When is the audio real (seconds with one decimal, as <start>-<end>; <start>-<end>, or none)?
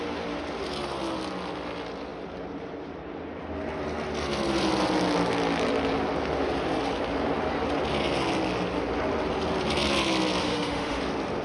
0.0-10.4; 11.0-11.4